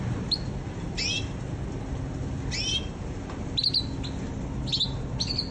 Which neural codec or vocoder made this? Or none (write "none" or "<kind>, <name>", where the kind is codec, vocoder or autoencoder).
none